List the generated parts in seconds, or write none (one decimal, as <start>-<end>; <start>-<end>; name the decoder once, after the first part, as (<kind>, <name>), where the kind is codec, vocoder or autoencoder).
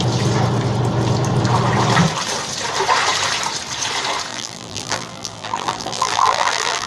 4.3-6.9 (vocoder, BigVGAN v2)